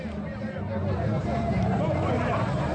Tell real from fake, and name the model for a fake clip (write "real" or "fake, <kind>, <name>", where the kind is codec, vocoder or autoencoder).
fake, vocoder, BigVGAN v2